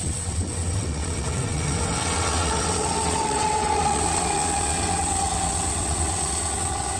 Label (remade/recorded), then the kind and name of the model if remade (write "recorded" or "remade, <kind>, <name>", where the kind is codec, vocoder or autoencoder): remade, vocoder, WaveNeXt